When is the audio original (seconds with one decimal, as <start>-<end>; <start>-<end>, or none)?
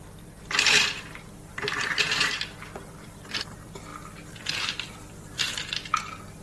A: 3.9-4.4